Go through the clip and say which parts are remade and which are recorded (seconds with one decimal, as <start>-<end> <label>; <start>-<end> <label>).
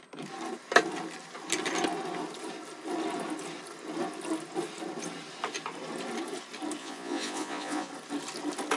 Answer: 0.0-6.8 recorded; 6.8-7.9 remade; 7.9-8.8 recorded